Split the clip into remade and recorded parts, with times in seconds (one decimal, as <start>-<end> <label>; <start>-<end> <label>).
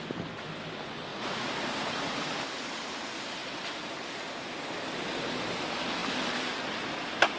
0.0-1.1 recorded; 1.1-2.4 remade; 2.4-7.4 recorded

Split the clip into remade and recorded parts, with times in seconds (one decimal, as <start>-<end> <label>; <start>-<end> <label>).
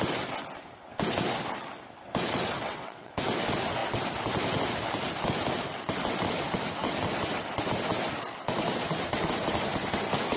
0.0-2.6 recorded; 2.6-3.1 remade; 3.1-10.4 recorded